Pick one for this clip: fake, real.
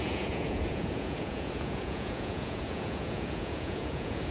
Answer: fake